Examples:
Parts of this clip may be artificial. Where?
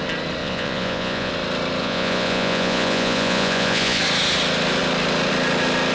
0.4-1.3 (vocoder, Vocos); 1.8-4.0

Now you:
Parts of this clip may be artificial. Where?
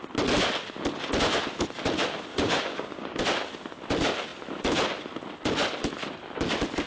2.3-3.2 (codec, DAC)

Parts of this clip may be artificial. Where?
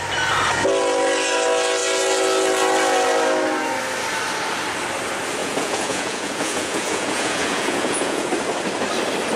5.4-8.3 (vocoder, Vocos)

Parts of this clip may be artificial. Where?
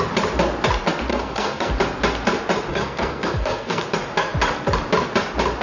1.1-1.7 (codec, SNAC); 2.7-3.8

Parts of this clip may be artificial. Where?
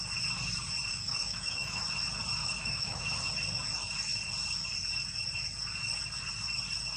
0.9-1.8 (autoencoder, DAC-VAE); 2.4-3.0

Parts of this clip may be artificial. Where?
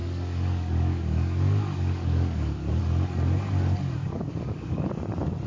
0.0-2.8 (codec, DAC); 4.0-4.9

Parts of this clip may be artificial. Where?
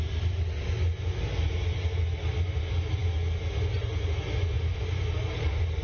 none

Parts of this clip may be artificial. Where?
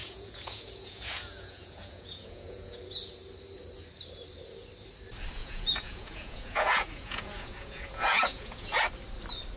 0.0-2.8 (vocoder, Vocos); 5.4-8.8